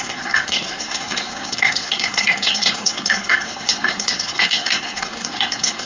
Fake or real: fake